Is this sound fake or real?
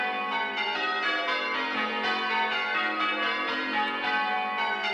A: real